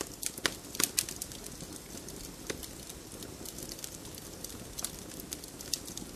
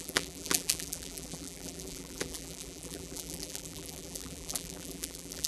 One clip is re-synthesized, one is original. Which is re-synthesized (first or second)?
second